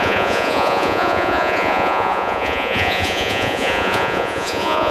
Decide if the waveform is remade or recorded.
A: remade